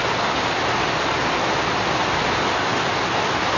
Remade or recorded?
recorded